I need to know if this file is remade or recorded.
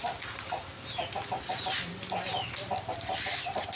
recorded